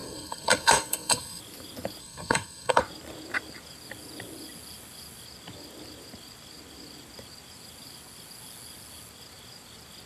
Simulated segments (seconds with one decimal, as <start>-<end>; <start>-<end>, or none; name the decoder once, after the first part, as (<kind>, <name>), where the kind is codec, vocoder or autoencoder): 0.0-1.4 (codec, SNAC); 2.0-2.8